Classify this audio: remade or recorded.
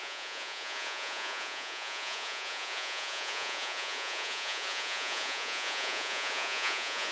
remade